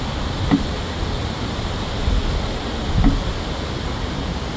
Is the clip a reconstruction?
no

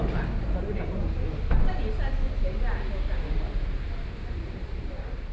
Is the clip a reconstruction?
no